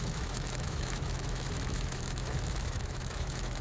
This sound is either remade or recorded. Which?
remade